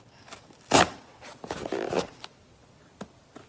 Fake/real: real